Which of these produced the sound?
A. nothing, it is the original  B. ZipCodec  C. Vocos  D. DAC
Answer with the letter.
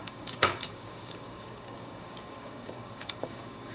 D